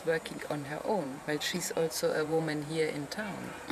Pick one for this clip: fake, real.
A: fake